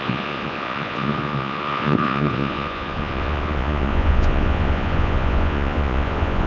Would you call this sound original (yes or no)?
no